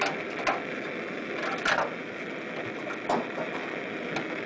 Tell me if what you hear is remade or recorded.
recorded